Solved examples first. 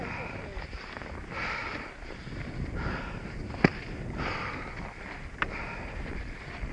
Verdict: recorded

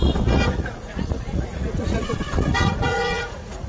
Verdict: remade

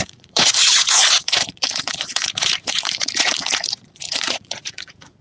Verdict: remade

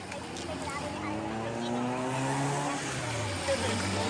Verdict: recorded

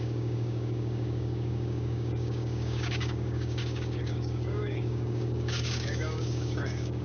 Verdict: remade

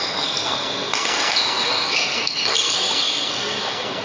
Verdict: remade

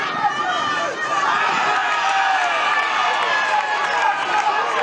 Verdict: recorded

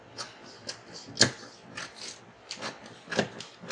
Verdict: recorded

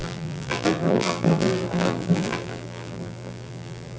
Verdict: remade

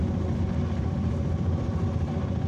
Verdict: recorded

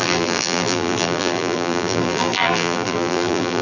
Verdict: remade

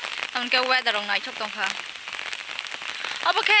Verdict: recorded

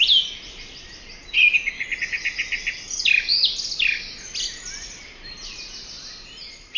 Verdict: recorded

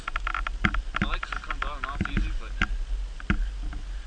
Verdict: recorded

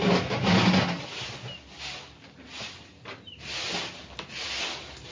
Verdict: recorded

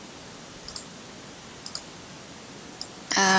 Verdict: recorded